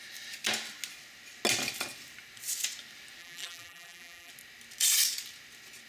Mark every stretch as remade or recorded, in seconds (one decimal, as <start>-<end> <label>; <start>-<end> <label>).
0.0-3.2 recorded; 3.2-4.3 remade; 4.3-5.9 recorded